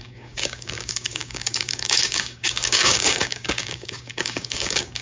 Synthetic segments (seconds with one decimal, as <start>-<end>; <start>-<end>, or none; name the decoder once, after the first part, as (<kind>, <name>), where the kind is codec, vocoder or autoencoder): 0.0-5.0 (codec, DAC)